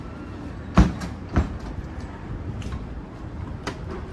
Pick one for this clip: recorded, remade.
remade